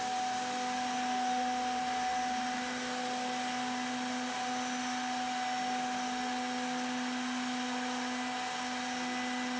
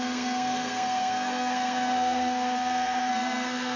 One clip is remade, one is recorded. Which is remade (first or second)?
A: second